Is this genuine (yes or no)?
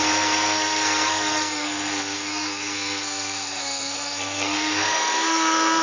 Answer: no